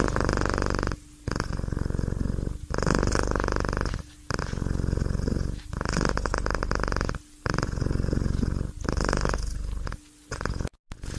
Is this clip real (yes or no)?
yes